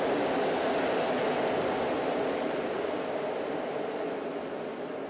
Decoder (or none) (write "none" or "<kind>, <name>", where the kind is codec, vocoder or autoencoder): none